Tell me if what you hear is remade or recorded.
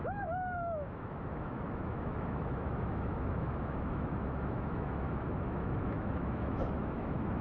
remade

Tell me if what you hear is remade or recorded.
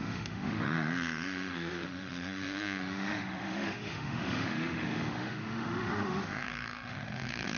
remade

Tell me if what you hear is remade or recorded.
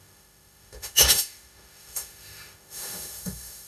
remade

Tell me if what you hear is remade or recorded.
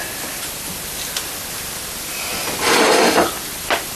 recorded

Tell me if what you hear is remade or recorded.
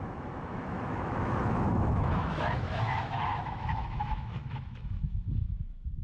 remade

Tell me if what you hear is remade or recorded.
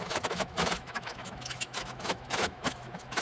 remade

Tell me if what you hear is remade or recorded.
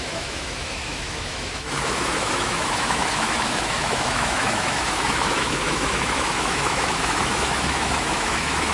remade